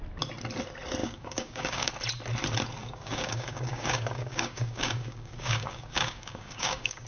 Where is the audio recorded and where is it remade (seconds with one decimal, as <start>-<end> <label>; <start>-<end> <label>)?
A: 0.0-1.0 recorded; 1.0-1.9 remade; 1.9-2.8 recorded; 2.8-7.1 remade